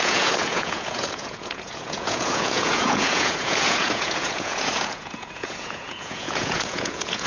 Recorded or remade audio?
remade